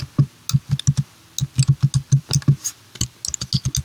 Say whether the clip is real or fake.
real